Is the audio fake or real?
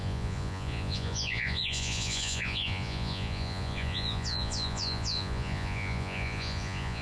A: fake